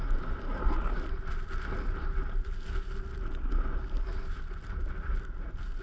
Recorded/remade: recorded